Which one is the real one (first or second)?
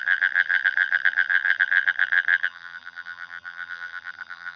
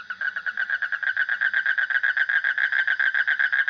second